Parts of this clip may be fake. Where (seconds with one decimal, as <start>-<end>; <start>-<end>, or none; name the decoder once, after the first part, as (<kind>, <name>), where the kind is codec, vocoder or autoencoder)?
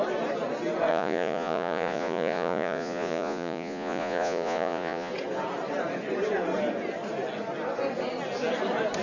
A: 0.9-5.1 (vocoder, Vocos)